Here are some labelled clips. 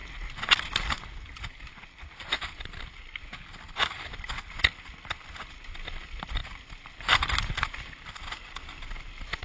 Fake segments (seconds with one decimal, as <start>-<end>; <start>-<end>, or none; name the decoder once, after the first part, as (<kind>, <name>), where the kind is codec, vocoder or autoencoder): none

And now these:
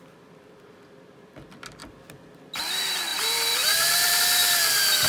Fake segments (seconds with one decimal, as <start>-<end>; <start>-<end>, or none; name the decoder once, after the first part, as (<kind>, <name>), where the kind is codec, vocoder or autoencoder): 3.1-4.2 (vocoder, BigVGAN v2)

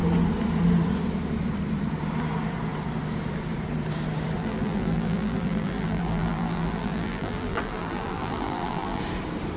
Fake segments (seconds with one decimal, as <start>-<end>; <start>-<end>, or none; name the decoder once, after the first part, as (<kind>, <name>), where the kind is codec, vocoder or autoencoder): 4.4-9.0 (vocoder, BigVGAN v2)